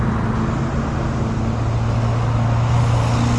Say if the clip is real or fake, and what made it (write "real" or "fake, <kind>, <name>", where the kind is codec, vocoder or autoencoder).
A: real